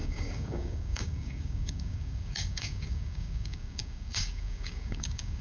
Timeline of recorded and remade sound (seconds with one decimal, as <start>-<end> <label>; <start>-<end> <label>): 0.0-5.4 remade